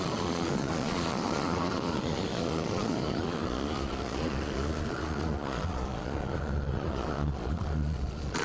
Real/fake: fake